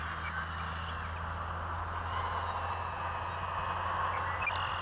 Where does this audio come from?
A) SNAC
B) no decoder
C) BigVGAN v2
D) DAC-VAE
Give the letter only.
B